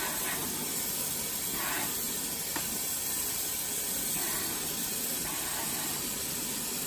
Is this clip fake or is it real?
real